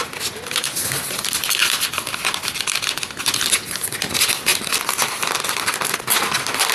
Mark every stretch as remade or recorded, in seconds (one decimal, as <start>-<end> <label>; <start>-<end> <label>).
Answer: 0.0-6.7 recorded